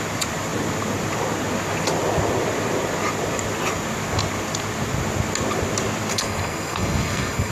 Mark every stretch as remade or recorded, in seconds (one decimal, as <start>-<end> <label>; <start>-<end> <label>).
0.0-6.1 recorded; 6.1-7.5 remade